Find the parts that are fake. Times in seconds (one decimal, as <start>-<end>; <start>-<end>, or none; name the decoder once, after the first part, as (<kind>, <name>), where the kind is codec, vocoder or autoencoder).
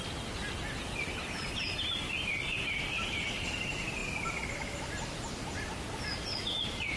none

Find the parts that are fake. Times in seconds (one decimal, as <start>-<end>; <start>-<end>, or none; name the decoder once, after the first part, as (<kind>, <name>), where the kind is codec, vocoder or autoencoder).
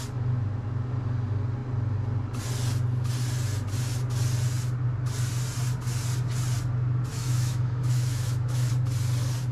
7.1-8.7 (autoencoder, DAC-VAE)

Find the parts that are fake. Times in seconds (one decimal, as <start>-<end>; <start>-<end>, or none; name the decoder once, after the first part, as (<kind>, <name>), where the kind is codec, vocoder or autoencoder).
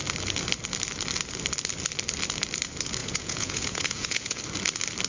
3.0-4.4 (vocoder, Vocos)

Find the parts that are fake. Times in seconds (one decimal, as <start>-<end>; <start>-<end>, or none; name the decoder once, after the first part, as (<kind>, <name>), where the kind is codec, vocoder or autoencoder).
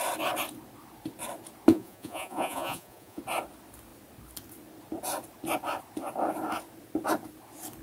1.7-3.2 (vocoder, Vocos)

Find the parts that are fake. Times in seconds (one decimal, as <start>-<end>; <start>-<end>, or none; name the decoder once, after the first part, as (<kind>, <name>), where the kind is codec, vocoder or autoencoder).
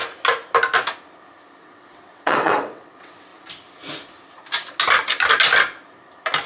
1.6-3.3 (vocoder, WaveNeXt)